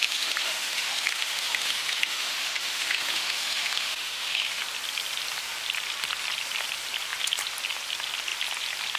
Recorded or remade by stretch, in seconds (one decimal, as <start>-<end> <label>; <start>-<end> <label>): 0.0-4.6 remade; 4.6-9.0 recorded